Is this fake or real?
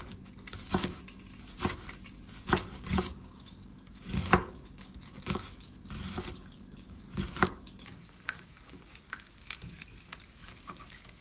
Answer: fake